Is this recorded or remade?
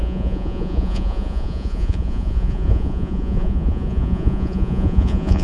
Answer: remade